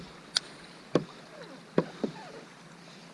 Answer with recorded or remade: recorded